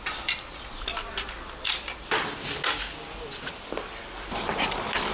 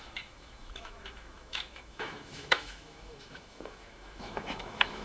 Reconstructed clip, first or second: second